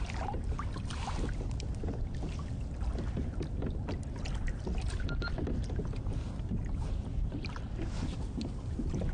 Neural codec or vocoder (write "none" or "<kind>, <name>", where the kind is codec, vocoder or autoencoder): none